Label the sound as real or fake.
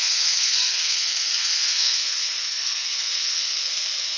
fake